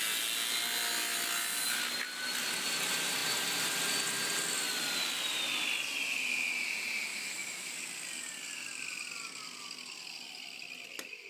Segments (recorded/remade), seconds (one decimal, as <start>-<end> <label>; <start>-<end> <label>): 0.0-7.1 recorded; 7.1-7.7 remade; 7.7-11.3 recorded